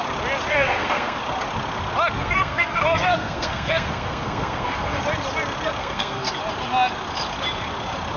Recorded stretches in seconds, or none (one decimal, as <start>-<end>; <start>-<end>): 0.0-0.5; 1.2-2.2; 5.0-5.8; 6.3-8.2

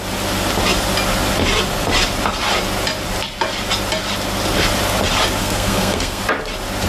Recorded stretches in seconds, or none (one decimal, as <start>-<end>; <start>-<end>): 0.0-5.4; 6.2-6.9

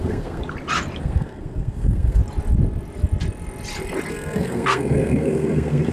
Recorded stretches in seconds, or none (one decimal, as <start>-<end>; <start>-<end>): 0.4-1.0; 2.2-4.1

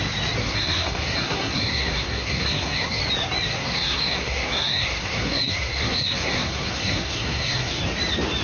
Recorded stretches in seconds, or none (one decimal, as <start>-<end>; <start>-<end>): 0.0-0.4; 3.0-3.5; 7.8-8.4